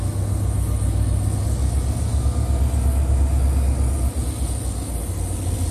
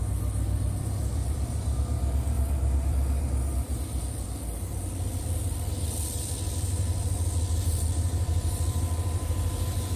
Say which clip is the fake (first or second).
second